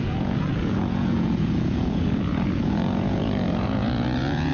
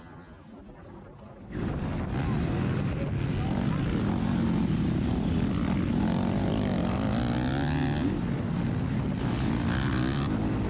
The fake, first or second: first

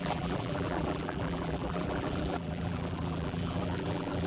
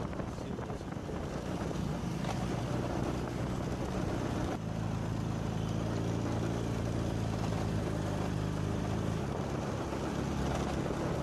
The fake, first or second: first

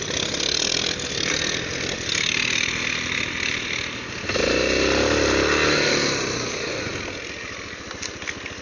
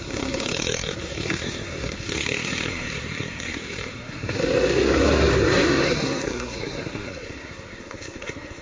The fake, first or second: second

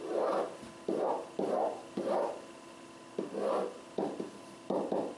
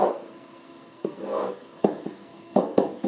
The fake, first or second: second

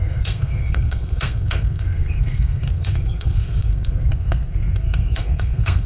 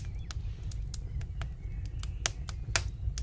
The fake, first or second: first